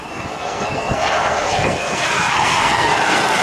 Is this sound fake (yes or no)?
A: yes